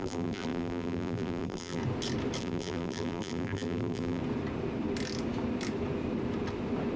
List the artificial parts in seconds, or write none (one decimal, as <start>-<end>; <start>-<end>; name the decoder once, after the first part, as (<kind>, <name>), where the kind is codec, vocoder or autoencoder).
0.0-1.8 (vocoder, BigVGAN v2); 2.4-4.2